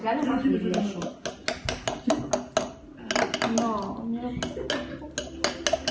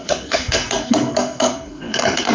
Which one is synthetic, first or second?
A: second